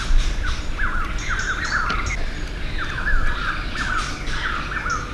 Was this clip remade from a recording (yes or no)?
no